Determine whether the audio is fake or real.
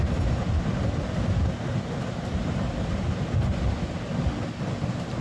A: real